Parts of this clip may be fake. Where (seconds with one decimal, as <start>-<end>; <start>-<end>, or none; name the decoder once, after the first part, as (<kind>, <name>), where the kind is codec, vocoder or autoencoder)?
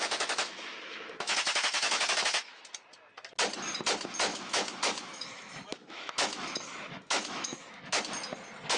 0.0-2.6 (autoencoder, DAC-VAE); 4.3-8.0